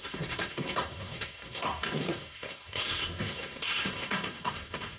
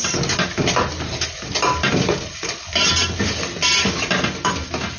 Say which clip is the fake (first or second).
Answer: first